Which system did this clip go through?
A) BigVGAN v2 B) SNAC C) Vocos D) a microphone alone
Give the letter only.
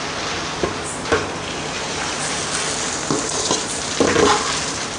D